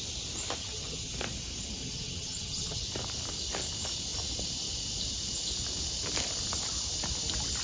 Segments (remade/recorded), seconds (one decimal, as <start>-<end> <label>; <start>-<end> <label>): 0.0-0.6 recorded; 0.6-1.1 remade; 1.1-1.8 recorded; 1.8-2.8 remade; 2.8-7.6 recorded